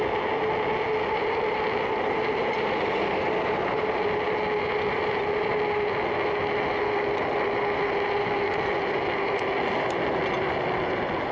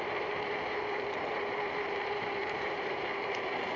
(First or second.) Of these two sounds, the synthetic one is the second